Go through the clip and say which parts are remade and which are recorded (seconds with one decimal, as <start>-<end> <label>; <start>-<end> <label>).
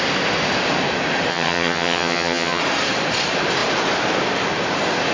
0.0-1.3 recorded; 1.3-2.6 remade; 2.6-5.1 recorded